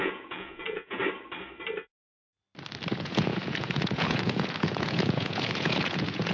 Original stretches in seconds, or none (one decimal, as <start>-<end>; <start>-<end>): 1.0-2.9